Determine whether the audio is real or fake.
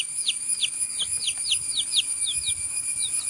fake